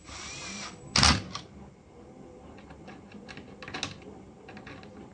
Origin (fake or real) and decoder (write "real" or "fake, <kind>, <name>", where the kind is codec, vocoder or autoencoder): real